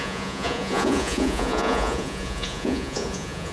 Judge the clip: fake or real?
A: fake